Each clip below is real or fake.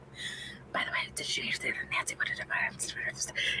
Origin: real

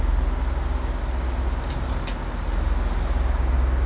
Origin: real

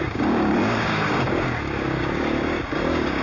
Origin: fake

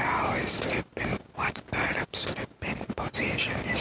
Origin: fake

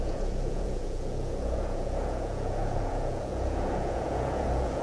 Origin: fake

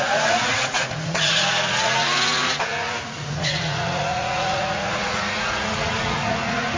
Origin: fake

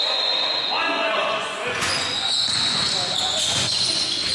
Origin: fake